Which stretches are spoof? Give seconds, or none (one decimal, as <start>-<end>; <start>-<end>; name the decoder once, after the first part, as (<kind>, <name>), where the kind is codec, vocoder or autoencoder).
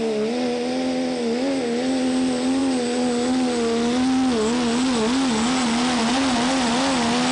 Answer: none